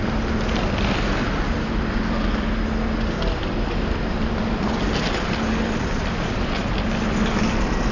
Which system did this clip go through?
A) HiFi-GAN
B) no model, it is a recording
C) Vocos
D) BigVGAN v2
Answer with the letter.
B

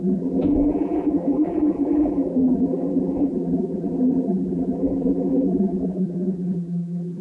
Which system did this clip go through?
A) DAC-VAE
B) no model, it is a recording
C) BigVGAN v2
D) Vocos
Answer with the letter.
C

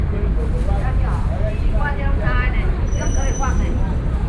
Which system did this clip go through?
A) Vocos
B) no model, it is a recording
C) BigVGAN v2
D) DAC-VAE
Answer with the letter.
C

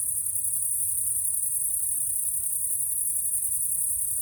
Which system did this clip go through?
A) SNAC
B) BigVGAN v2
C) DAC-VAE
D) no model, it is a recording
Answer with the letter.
D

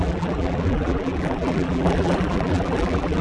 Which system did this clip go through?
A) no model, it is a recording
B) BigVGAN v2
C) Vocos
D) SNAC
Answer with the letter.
B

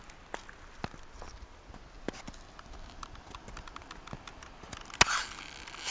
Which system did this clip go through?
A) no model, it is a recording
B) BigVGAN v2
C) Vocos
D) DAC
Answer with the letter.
A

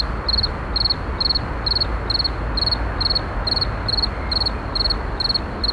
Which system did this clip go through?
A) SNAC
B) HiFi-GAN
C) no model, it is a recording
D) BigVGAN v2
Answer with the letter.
C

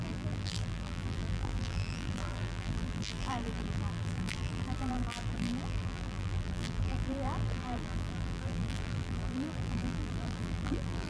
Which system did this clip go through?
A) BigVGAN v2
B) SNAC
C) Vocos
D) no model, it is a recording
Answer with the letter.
A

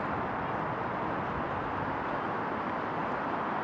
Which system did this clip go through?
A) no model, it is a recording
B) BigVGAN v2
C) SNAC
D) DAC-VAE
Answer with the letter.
A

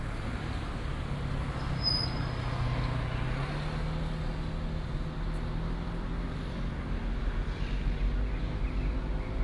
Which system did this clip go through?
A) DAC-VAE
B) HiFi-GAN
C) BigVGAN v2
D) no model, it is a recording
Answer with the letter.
D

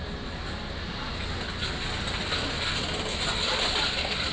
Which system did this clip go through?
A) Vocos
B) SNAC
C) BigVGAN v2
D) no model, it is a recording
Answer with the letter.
D